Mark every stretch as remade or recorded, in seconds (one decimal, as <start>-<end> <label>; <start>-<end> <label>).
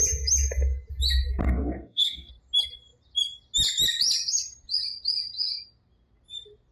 0.0-1.4 recorded; 1.4-2.3 remade; 2.3-6.7 recorded